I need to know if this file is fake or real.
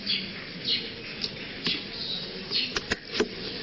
real